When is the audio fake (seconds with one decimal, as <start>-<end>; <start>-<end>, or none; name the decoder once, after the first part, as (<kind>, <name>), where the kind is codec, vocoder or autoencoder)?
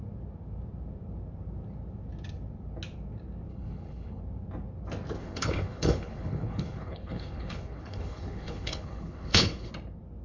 3.5-4.2 (codec, HILCodec); 5.2-9.7